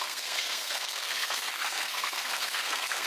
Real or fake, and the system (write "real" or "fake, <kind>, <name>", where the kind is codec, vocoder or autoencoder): fake, codec, SNAC